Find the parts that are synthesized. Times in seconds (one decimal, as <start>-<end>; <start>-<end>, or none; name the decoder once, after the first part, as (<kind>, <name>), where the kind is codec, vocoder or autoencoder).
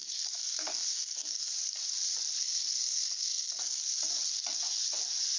0.0-1.5 (codec, SNAC); 2.4-3.8